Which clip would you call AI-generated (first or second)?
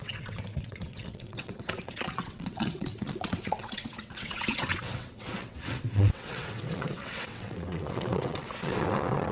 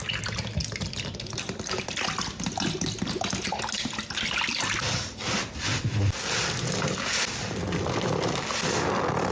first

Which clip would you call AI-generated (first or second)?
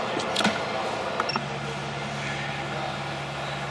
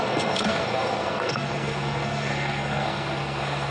second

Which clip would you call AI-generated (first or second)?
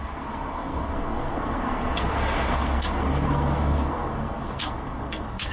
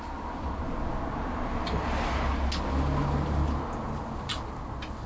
first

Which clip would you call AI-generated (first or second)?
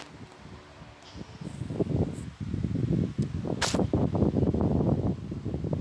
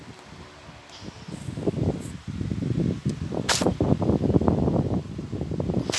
second